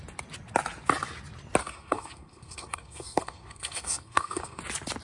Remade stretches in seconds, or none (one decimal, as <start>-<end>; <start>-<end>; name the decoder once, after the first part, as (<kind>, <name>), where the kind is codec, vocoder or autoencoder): 1.6-4.6 (codec, SNAC)